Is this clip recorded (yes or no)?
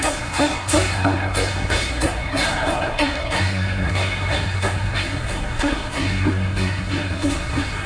no